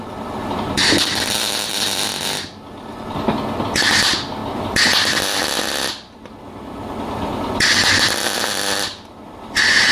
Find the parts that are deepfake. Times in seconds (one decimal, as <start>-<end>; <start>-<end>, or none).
none